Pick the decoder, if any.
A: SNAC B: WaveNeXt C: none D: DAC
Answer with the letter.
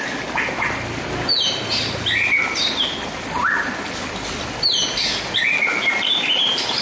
C